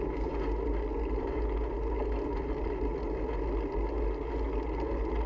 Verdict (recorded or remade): recorded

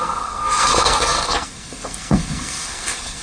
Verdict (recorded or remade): remade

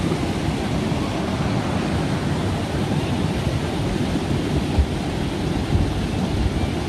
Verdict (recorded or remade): recorded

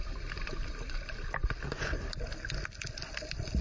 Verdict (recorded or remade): recorded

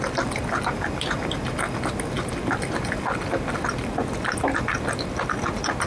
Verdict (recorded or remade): recorded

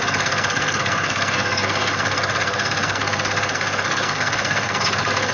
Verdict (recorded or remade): remade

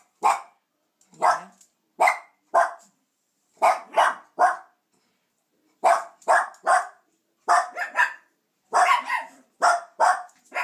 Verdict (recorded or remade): recorded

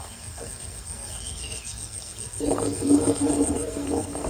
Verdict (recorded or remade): remade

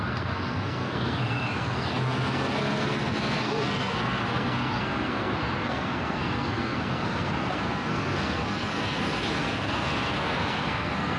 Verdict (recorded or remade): remade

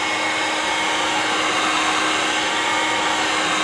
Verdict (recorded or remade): recorded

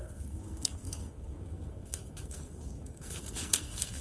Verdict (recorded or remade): remade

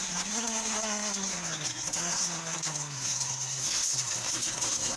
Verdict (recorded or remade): remade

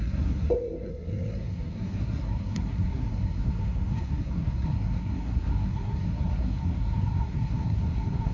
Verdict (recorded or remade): remade